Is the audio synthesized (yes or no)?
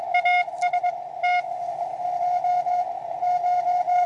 no